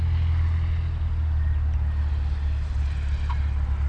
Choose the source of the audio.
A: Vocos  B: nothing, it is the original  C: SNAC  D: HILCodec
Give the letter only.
B